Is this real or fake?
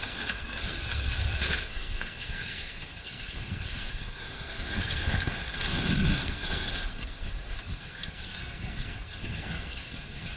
fake